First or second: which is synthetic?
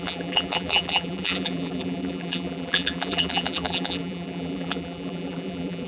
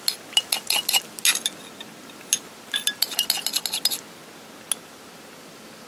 first